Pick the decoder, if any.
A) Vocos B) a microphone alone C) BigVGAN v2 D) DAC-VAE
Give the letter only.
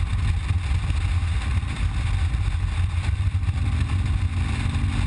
B